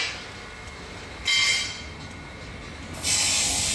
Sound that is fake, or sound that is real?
real